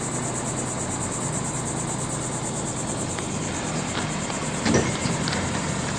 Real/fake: real